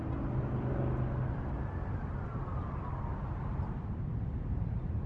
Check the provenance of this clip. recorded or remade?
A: recorded